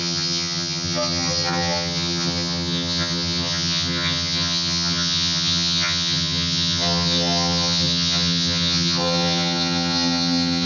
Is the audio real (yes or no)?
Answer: no